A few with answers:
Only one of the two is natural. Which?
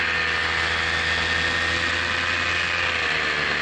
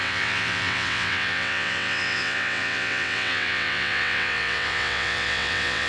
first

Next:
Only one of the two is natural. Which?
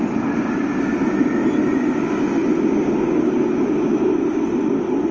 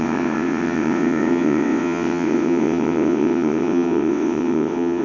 first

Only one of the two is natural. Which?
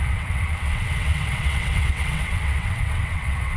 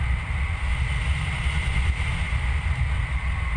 second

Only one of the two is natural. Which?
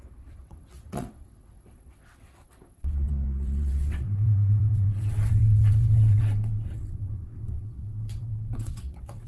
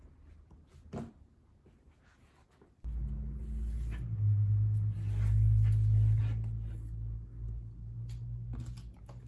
second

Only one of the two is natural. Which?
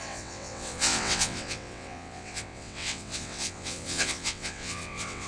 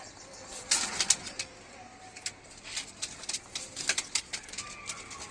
second